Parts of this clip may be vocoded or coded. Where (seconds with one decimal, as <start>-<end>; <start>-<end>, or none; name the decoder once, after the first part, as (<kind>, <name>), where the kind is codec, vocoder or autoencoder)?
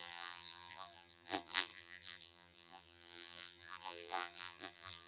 0.0-5.1 (vocoder, BigVGAN v2)